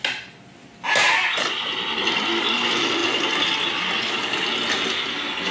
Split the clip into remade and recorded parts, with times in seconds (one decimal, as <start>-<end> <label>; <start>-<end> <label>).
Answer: 0.0-5.5 recorded